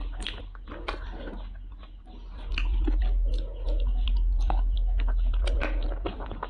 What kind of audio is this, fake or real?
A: real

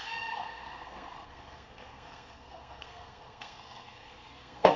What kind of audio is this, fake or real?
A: fake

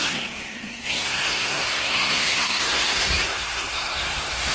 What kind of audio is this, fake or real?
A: fake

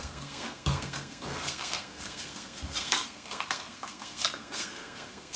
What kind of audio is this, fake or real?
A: fake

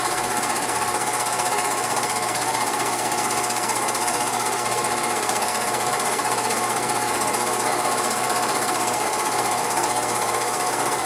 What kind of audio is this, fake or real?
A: fake